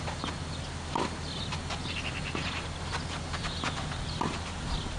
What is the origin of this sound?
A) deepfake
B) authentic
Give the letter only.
B